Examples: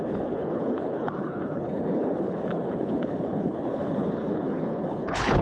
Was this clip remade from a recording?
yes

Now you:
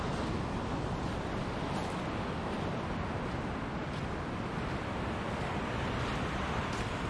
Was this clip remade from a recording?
no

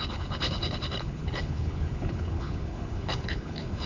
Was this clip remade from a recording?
yes